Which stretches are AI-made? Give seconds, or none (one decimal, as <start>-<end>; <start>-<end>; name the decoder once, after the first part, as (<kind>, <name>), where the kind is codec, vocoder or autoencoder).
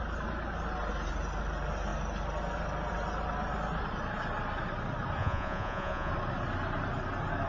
5.2-6.1 (vocoder, Vocos)